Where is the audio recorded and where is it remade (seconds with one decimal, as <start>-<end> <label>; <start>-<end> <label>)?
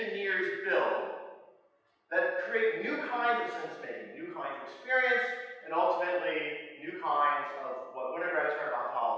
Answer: 0.0-3.6 recorded; 3.6-4.4 remade; 4.4-9.2 recorded